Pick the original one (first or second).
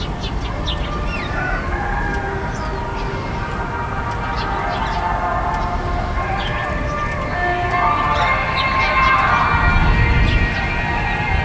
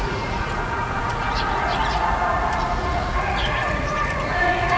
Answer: first